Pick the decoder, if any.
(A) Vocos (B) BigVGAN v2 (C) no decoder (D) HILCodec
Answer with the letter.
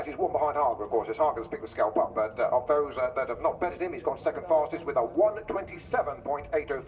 C